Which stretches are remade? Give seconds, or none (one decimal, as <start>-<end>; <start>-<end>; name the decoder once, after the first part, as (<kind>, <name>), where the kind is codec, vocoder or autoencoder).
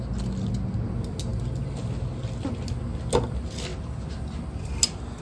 none